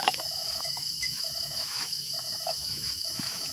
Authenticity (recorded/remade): remade